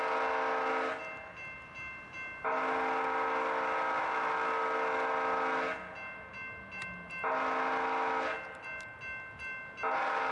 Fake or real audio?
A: real